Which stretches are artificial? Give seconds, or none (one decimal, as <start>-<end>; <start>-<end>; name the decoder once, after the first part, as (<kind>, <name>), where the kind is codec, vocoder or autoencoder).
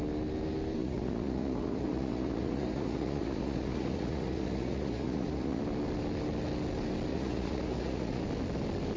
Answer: 0.8-5.6 (vocoder, Vocos); 7.1-8.2